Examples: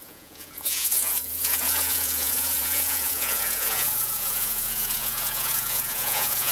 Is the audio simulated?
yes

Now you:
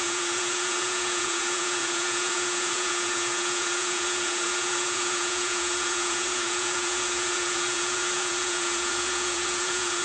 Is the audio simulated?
yes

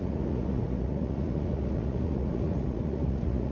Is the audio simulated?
yes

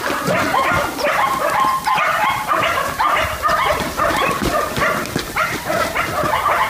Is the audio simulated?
no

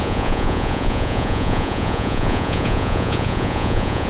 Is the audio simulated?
yes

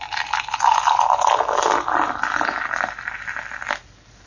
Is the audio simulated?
no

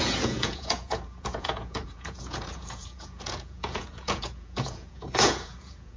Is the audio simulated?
yes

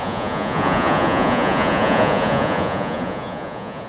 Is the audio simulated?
yes